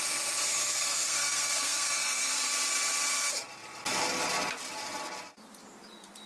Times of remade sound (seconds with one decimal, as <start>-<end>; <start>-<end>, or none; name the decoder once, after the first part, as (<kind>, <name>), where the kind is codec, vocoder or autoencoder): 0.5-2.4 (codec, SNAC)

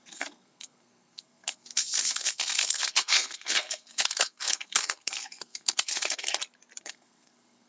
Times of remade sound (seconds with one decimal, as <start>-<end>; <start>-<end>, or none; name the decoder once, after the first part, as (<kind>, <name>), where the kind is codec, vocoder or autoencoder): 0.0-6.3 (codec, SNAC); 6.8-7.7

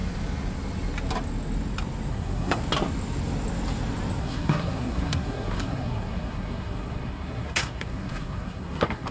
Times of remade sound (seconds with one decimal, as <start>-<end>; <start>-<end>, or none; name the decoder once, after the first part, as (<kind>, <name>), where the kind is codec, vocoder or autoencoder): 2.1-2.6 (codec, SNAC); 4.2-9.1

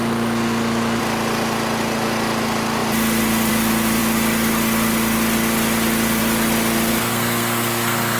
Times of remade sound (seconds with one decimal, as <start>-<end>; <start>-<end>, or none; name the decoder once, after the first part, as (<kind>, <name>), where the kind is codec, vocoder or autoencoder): 6.9-8.2 (codec, SNAC)